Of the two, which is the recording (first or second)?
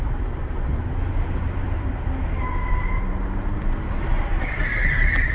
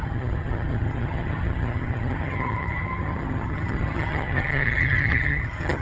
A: first